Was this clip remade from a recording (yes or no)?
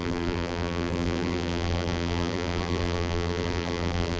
yes